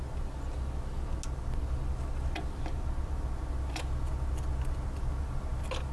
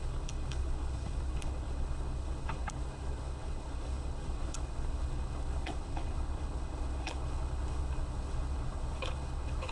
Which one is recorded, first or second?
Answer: first